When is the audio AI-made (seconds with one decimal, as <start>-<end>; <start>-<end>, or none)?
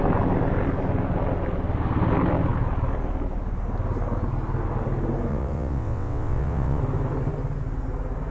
5.3-6.8